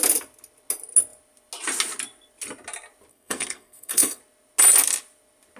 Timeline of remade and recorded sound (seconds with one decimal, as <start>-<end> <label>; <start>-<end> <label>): 0.0-3.1 recorded; 3.1-4.2 remade; 4.2-5.6 recorded

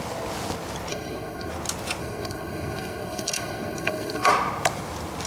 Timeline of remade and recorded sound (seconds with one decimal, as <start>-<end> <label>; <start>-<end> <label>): 0.0-0.9 recorded; 0.9-1.5 remade; 1.5-2.0 recorded; 2.0-4.3 remade; 4.3-5.3 recorded

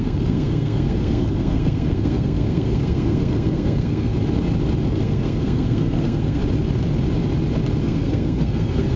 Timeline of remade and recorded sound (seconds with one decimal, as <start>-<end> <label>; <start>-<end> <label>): 0.0-4.1 remade; 4.1-4.9 recorded; 4.9-6.4 remade; 6.4-7.8 recorded; 7.8-9.0 remade

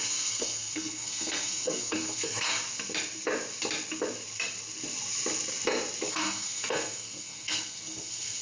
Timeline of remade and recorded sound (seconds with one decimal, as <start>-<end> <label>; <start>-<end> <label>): 0.0-2.5 remade; 2.5-6.1 recorded; 6.1-8.4 remade

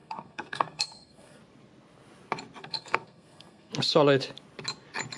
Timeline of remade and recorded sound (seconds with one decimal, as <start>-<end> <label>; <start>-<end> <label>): 0.0-1.4 remade; 1.4-2.6 recorded; 2.6-3.7 remade; 3.7-5.2 recorded